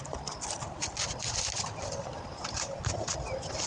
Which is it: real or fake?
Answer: real